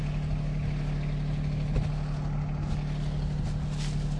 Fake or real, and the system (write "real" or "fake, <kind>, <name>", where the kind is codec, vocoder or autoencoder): real